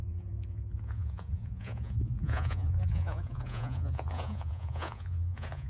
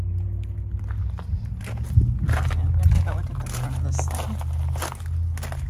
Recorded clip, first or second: second